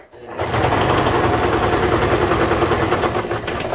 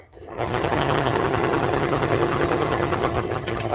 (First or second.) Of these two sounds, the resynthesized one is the second